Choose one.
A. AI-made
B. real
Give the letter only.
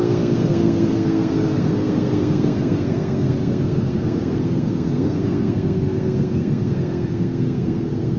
A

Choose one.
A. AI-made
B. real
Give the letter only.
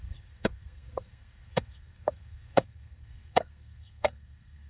A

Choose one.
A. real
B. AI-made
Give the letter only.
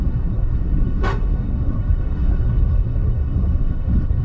B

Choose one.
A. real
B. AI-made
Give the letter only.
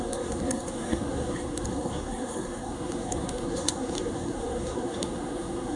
B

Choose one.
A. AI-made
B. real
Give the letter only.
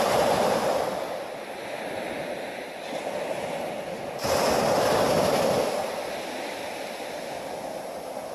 B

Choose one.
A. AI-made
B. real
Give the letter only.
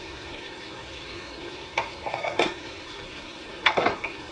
A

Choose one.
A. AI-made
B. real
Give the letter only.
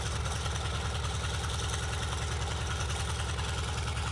B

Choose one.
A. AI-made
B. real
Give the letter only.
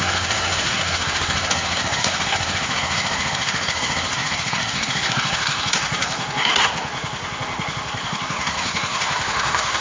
A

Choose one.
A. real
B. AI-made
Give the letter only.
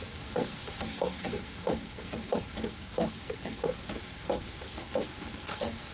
B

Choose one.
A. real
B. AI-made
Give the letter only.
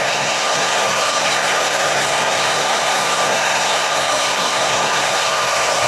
B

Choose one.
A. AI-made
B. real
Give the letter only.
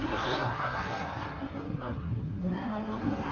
A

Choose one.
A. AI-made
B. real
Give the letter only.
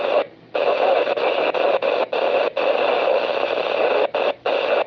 B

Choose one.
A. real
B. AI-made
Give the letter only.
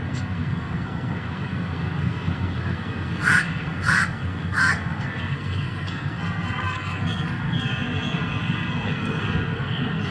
B